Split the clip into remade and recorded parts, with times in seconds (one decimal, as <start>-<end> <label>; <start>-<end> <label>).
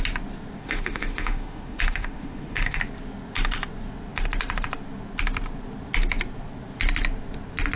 0.0-0.6 recorded; 0.6-2.8 remade; 2.8-7.8 recorded